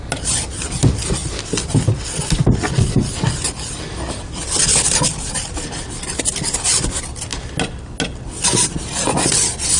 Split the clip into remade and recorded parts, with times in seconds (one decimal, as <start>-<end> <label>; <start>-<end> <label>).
0.0-9.8 recorded